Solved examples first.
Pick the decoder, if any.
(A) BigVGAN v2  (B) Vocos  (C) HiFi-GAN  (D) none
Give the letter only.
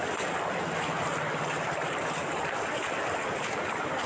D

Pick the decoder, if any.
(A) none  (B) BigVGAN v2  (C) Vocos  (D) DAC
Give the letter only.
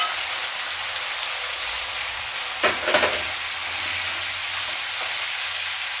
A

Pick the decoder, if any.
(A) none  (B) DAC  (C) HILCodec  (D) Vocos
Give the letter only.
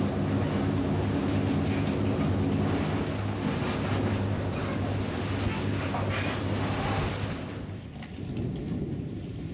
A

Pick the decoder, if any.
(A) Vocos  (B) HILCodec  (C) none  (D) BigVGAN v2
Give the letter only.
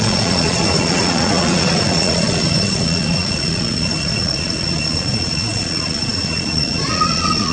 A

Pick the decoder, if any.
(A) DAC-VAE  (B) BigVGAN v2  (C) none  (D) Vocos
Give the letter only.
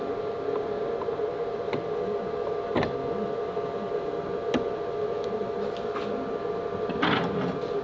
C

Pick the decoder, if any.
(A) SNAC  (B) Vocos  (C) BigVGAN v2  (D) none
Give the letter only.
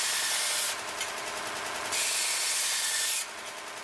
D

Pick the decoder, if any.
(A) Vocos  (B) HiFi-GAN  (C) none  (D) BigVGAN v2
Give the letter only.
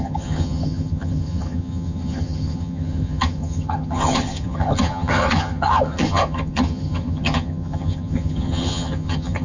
B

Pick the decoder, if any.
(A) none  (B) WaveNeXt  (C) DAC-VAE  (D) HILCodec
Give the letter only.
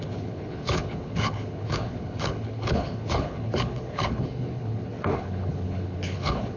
D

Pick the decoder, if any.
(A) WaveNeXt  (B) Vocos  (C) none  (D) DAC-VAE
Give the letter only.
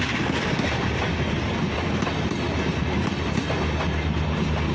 C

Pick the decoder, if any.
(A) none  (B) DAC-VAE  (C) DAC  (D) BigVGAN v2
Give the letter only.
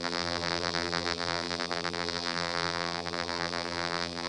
D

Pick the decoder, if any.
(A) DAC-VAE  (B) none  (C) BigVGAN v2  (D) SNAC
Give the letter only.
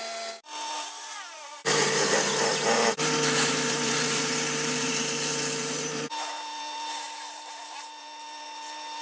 C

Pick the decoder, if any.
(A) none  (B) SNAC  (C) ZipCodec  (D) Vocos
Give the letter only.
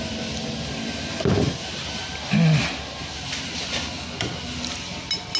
A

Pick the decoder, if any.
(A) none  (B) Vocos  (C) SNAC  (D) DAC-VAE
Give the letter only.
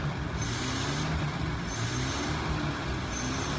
A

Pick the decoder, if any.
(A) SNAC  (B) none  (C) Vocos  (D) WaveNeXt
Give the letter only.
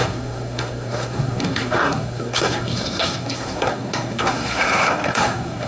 A